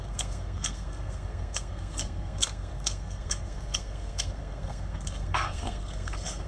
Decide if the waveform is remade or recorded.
remade